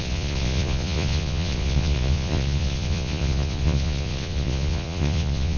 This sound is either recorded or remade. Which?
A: remade